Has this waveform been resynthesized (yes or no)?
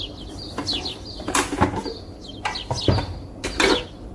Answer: no